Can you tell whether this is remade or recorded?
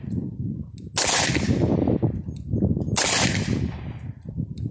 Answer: recorded